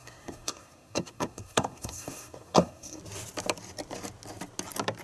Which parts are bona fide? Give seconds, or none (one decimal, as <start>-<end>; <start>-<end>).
3.0-5.0